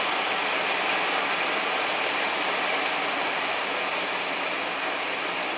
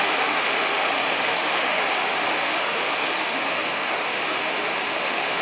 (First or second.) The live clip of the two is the first